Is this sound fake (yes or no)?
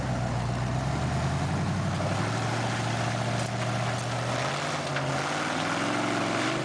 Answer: no